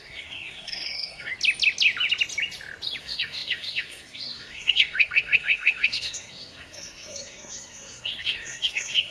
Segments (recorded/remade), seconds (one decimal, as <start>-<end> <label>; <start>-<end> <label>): 0.0-1.3 remade; 1.3-3.0 recorded; 3.0-9.1 remade